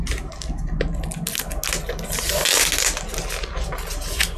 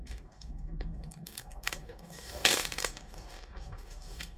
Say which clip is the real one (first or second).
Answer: first